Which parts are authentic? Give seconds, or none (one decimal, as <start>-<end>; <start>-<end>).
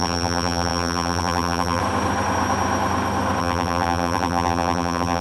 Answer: 1.8-3.4